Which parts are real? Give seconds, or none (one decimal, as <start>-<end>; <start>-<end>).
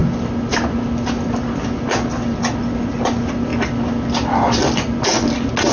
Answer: 0.0-5.7